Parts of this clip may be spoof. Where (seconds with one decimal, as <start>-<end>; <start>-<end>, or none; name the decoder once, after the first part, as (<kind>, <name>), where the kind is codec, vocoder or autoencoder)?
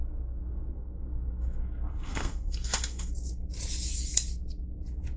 0.0-3.1 (codec, SNAC)